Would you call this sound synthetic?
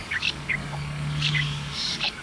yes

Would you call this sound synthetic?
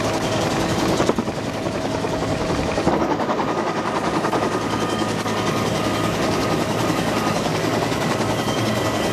yes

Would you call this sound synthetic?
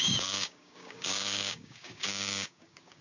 yes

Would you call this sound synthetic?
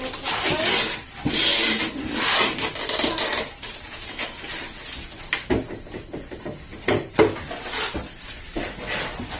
no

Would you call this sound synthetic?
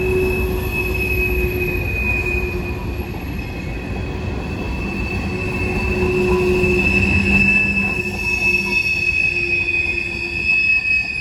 no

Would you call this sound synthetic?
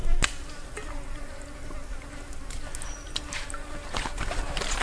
no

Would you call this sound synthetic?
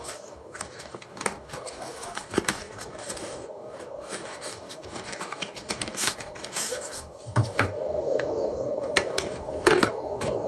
yes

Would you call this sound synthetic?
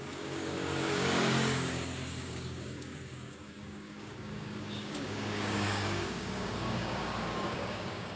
yes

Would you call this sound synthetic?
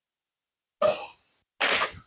no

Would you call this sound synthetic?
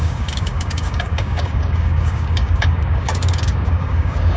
yes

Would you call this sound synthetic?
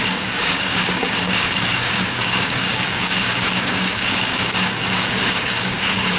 yes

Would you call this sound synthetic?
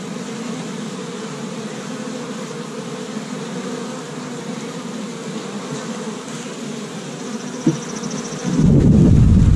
no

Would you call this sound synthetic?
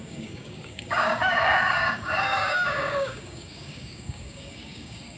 yes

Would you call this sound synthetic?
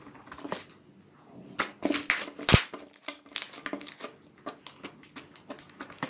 no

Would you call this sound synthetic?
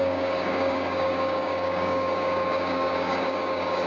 yes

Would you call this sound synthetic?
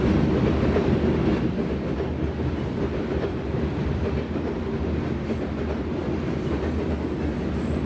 no